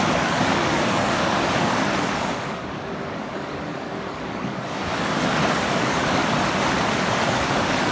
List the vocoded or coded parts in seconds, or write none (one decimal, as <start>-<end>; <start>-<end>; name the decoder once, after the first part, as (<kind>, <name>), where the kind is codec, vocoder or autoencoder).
0.0-6.2 (codec, DAC); 7.1-7.9